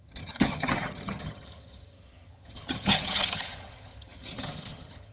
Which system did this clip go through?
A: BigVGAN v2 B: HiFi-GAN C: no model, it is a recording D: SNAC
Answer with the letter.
B